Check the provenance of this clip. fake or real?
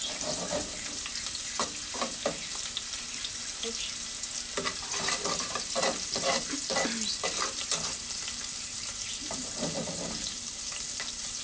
real